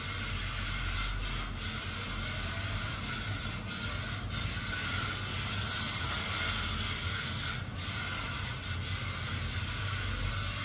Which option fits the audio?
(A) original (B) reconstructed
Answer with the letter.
A